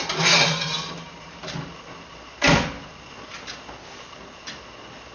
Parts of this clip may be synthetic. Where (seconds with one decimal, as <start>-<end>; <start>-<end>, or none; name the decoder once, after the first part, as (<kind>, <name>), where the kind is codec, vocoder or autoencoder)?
none